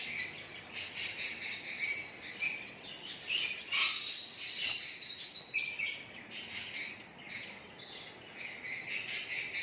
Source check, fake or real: real